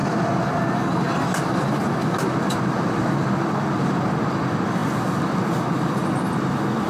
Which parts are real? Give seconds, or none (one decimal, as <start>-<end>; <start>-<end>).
0.0-6.9

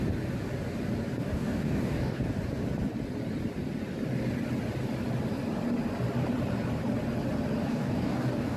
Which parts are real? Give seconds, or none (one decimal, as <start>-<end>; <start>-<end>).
0.0-1.2; 2.2-7.7

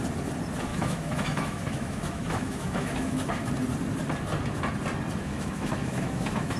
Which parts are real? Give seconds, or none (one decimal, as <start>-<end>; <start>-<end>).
0.0-0.7; 3.5-5.2

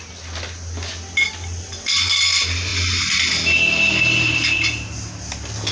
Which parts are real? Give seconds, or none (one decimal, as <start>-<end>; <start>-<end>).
0.0-5.7

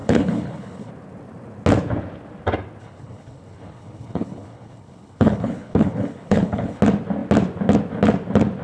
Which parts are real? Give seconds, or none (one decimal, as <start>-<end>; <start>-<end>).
0.9-2.8; 6.8-8.6